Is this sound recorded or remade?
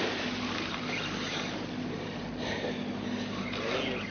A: recorded